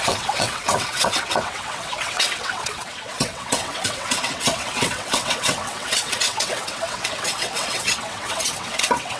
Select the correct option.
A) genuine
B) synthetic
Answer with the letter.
B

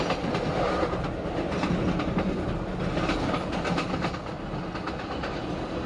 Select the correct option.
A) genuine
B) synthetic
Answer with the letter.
A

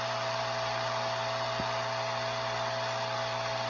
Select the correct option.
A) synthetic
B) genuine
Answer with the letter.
B